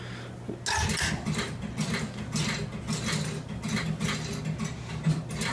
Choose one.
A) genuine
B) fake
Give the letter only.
A